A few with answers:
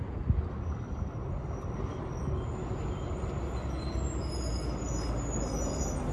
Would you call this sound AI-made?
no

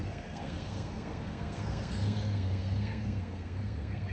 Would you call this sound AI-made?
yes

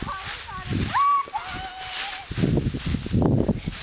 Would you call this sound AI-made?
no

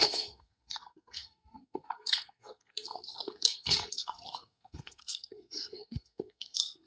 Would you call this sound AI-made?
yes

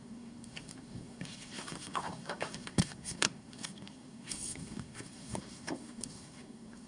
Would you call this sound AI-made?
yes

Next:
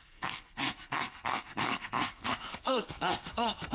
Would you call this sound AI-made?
yes